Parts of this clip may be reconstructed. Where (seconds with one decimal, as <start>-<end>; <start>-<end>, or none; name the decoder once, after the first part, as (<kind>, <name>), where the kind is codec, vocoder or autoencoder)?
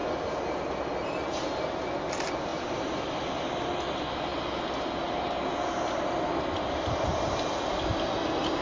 2.5-3.1 (vocoder, BigVGAN v2)